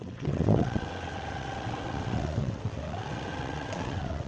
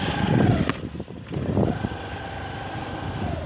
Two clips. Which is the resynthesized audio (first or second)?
first